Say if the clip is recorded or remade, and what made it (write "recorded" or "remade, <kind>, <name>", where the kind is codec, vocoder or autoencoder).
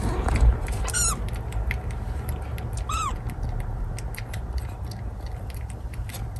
recorded